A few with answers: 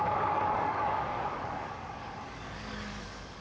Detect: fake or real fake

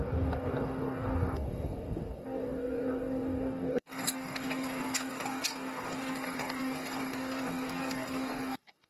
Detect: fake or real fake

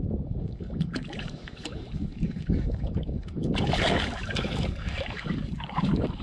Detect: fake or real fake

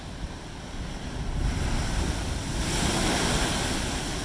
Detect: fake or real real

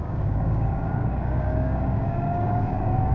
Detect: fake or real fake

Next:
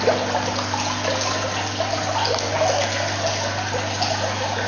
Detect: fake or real real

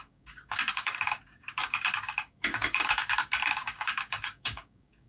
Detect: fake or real fake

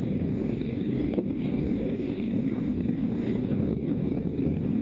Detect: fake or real fake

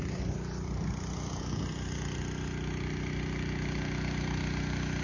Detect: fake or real real